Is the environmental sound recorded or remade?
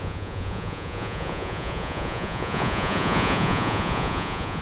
remade